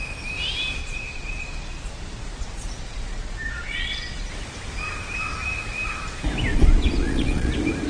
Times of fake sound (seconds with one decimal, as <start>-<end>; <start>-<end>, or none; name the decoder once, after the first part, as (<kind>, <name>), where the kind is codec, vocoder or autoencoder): 0.8-4.3 (vocoder, Vocos); 6.5-7.5